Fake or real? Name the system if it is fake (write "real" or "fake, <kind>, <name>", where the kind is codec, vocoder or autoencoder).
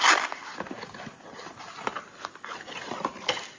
real